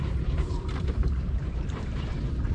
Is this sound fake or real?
fake